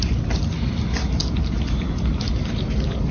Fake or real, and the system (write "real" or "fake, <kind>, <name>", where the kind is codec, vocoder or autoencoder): real